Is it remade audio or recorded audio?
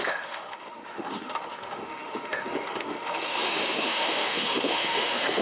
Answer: remade